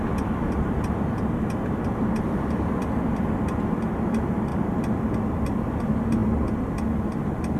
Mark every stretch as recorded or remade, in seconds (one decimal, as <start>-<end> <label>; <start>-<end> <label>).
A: 0.0-7.6 recorded